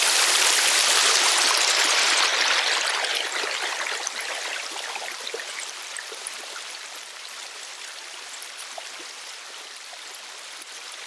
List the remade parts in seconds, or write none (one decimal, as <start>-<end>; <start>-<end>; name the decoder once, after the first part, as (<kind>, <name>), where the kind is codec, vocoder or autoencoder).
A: none